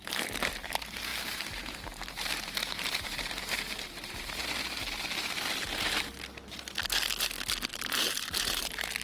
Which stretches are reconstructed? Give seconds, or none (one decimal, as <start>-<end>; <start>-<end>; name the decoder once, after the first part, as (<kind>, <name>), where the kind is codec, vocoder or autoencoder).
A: 0.0-4.4 (vocoder, BigVGAN v2); 7.7-9.0